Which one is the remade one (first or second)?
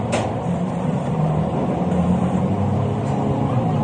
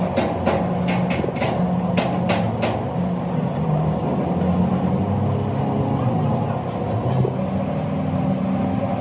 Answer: first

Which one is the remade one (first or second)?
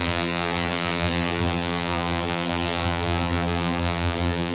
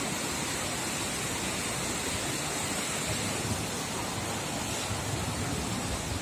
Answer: first